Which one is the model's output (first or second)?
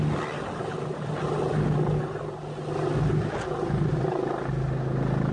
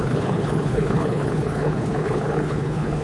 second